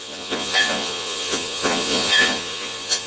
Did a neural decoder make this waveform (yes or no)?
yes